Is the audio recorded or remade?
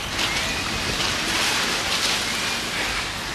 recorded